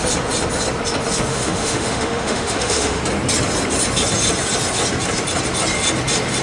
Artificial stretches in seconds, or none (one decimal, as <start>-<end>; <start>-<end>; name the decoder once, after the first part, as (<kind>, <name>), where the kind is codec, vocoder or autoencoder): 1.3-3.0 (autoencoder, DAC-VAE)